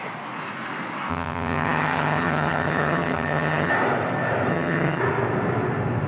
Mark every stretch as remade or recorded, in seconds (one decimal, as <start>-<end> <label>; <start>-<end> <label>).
0.0-1.1 recorded; 1.1-3.7 remade; 3.7-4.5 recorded; 4.5-5.0 remade; 5.0-6.1 recorded